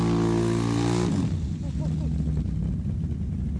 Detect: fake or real real